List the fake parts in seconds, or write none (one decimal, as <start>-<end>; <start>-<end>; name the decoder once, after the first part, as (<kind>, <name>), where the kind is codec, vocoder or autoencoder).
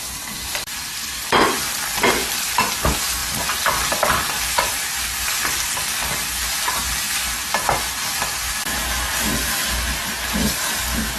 none